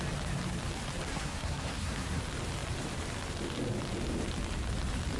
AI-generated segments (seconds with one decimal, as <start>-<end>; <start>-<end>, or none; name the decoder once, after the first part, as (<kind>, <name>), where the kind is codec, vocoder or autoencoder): 1.1-2.2 (codec, SNAC)